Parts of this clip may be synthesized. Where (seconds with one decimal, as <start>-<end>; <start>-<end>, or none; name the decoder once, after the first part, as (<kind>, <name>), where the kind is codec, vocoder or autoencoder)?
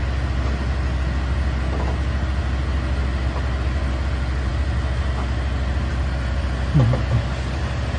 none